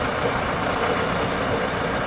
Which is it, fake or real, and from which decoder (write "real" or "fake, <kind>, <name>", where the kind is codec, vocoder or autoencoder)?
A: real